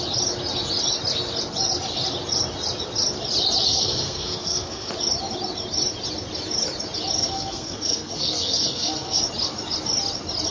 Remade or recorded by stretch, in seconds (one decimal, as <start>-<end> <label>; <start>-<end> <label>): 0.0-3.7 recorded; 3.7-4.9 remade; 4.9-7.2 recorded; 7.2-9.2 remade; 9.2-10.5 recorded